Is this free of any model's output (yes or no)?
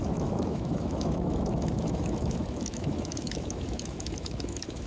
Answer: no